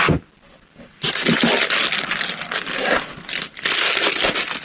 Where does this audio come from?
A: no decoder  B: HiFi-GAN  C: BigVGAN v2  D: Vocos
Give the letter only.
A